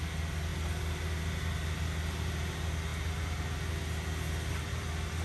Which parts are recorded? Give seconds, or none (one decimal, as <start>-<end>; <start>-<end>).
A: 0.0-5.2